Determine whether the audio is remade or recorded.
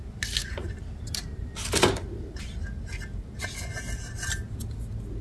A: recorded